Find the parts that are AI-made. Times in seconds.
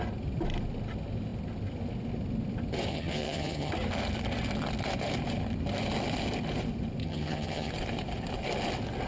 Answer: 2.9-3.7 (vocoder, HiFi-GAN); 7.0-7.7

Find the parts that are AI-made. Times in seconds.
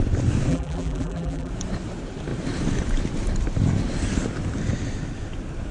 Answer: 0.5-1.5 (vocoder, BigVGAN v2)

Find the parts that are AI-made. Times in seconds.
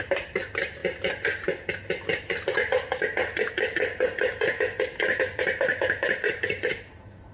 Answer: 0.0-0.8 (vocoder, BigVGAN v2); 5.2-7.3